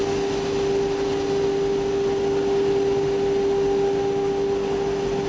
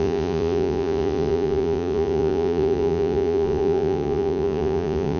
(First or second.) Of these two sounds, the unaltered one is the first